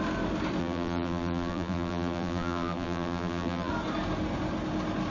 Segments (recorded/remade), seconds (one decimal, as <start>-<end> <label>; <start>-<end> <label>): 0.0-0.6 recorded; 0.6-3.7 remade; 3.7-5.1 recorded